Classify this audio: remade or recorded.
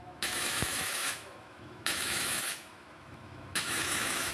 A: remade